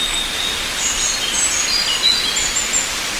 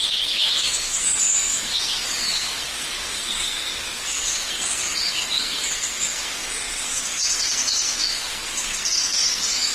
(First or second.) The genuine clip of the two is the first